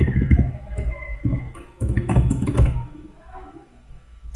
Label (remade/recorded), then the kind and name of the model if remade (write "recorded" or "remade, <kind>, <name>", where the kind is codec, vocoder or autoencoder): remade, autoencoder, DAC-VAE